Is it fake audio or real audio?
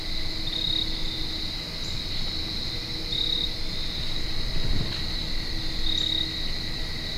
real